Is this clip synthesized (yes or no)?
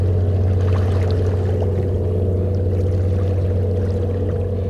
no